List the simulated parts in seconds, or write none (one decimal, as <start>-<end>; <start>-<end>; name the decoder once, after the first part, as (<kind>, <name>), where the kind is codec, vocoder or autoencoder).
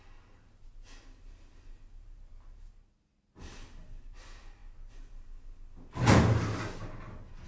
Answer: none